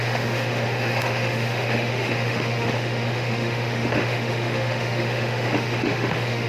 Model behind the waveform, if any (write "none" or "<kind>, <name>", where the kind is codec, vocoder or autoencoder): autoencoder, DAC-VAE